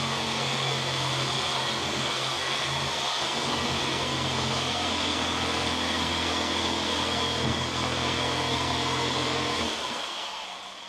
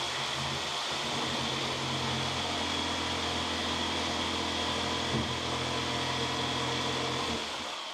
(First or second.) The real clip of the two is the second